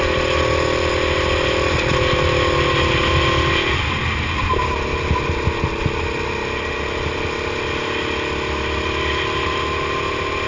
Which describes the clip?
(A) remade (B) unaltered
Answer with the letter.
B